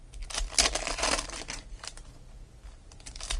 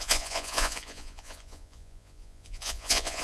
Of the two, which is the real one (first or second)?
first